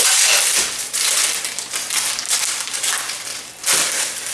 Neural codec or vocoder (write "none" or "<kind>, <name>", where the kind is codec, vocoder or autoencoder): none